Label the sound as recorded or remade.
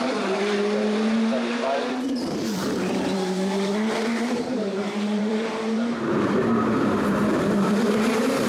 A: remade